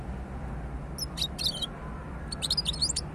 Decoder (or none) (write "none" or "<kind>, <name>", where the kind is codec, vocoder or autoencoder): none